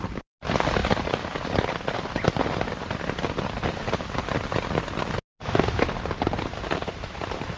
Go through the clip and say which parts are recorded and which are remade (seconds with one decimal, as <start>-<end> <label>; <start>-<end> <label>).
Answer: 0.0-7.6 recorded